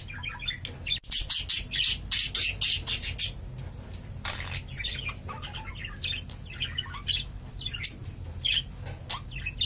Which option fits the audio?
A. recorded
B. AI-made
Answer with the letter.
A